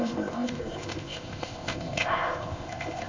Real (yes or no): no